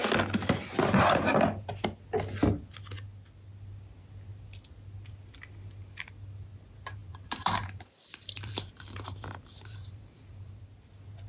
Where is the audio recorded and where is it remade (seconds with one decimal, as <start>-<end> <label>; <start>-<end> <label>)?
0.0-7.0 recorded; 7.0-10.6 remade; 10.6-11.3 recorded